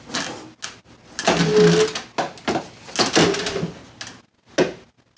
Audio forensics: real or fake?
real